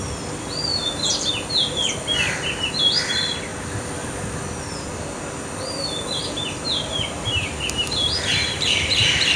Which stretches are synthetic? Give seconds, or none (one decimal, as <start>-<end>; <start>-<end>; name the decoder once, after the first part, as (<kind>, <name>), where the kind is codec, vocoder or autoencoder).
6.2-9.4 (vocoder, BigVGAN v2)